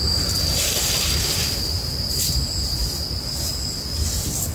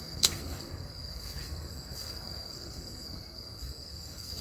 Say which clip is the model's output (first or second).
second